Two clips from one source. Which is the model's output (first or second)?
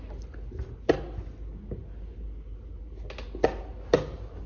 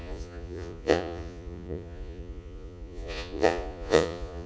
second